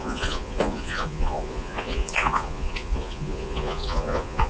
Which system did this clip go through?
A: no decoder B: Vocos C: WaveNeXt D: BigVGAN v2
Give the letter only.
B